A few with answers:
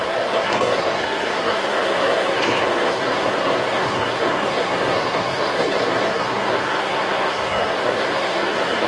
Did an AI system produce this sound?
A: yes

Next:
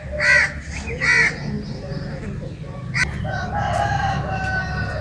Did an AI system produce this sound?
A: no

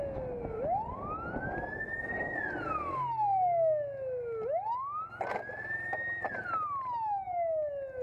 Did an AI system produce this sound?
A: no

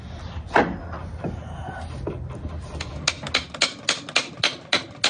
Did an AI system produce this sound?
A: no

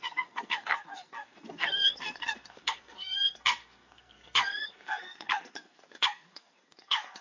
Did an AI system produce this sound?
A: yes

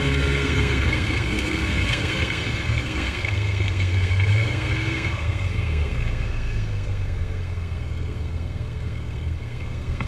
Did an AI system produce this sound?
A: yes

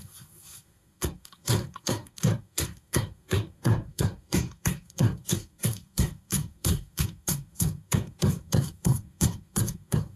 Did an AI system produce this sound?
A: yes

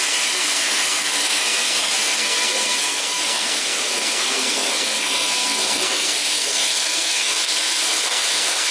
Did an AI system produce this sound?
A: yes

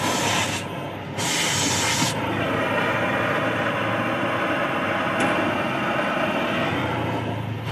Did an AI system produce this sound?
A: no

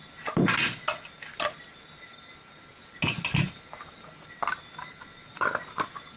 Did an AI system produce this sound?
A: no